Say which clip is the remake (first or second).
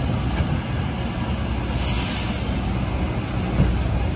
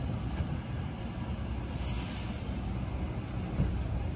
second